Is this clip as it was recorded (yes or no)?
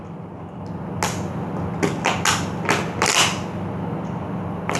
yes